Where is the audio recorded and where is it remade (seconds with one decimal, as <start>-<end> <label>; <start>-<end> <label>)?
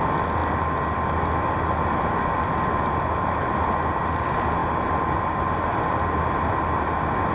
0.0-7.3 recorded